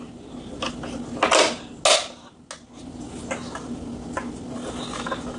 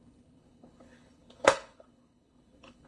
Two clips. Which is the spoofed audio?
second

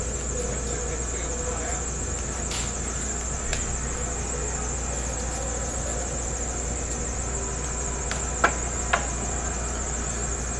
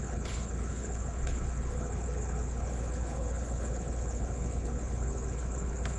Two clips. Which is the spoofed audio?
second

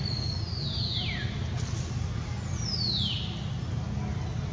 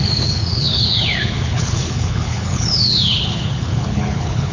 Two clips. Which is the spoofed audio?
second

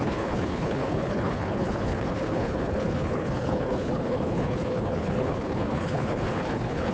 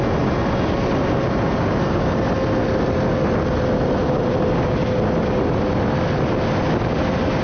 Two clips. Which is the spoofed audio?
first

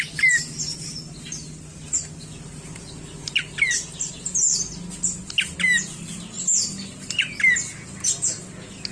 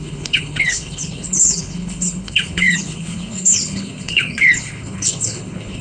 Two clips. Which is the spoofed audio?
second